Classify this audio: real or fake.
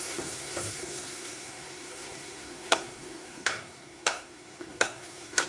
fake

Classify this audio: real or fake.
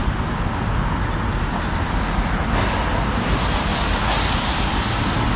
real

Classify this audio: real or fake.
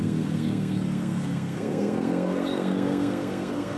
fake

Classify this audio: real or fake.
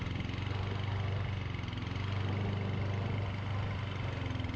real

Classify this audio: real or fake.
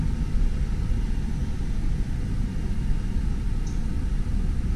real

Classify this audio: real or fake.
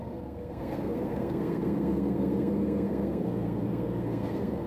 fake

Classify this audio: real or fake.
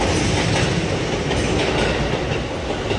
real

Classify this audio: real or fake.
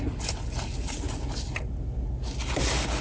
real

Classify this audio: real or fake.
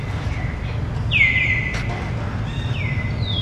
real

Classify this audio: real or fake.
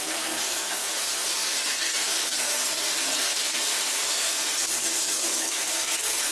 fake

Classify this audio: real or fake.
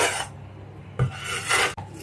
real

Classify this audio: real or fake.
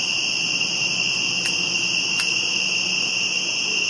real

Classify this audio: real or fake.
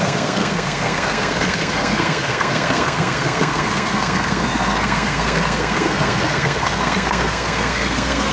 fake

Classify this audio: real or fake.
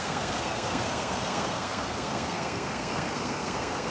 fake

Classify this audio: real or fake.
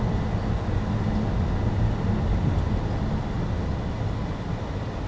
real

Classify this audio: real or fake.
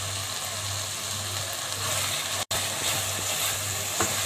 real